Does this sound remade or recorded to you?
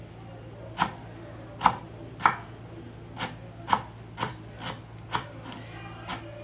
recorded